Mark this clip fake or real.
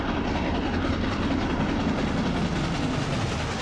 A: real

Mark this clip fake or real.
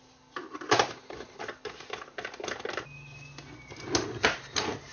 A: real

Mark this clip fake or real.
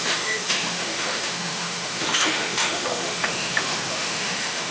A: fake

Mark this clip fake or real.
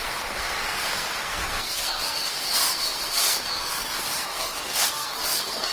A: fake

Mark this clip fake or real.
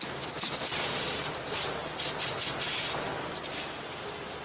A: real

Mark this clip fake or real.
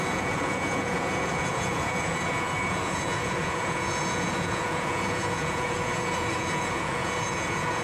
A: fake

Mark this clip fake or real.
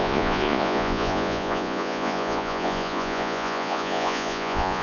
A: fake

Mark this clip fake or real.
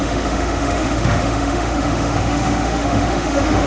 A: fake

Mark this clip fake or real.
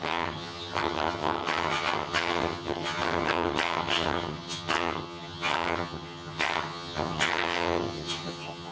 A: fake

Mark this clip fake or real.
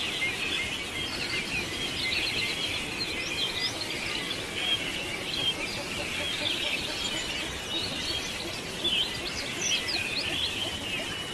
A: real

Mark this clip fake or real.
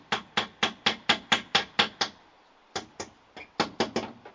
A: real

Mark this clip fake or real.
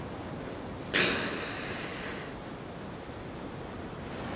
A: real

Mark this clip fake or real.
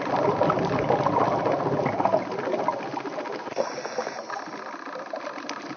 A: real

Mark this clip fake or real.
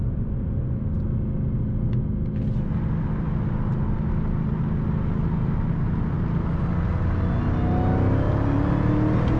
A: real